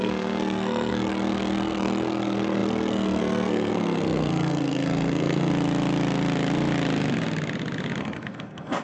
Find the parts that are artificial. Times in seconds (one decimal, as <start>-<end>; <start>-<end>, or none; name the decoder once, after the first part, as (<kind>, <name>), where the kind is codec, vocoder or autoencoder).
0.0-5.5 (codec, SNAC); 8.0-8.8